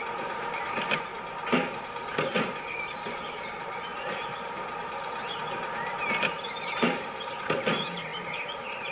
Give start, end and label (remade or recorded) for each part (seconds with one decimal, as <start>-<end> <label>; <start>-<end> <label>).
0.0-1.1 remade; 1.1-1.8 recorded; 1.8-3.9 remade; 3.9-6.2 recorded; 6.2-8.9 remade